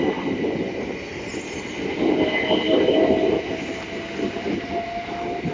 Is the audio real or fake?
real